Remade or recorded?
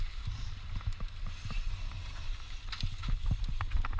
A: recorded